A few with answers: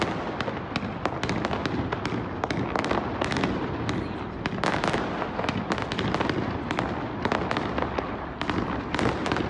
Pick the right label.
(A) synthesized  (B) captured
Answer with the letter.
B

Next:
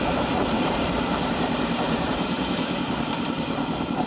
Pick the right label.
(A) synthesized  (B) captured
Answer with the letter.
A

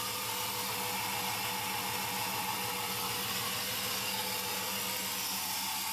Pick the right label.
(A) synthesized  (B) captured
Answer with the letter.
B